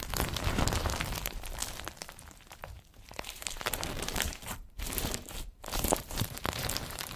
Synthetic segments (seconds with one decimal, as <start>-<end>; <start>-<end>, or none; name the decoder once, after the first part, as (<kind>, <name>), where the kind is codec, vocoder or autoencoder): 0.0-7.2 (vocoder, BigVGAN v2)